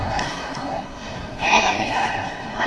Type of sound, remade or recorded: remade